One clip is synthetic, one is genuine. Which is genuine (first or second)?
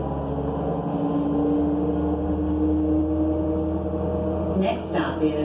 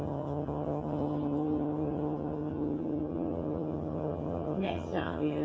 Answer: first